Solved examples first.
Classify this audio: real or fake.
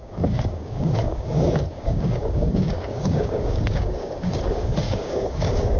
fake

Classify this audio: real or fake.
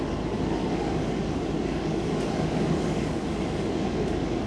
fake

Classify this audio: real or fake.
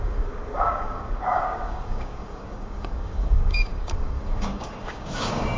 fake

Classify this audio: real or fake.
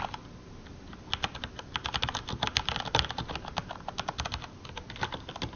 real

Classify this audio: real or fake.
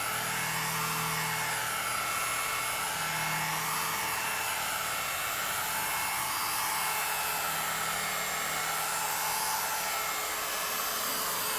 real